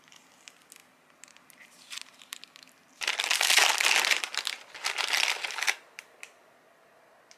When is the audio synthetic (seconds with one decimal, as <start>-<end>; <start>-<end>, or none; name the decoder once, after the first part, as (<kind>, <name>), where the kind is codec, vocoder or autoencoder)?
none